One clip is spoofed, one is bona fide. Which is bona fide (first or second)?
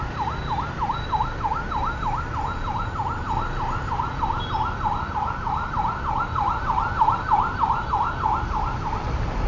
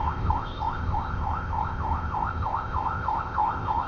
first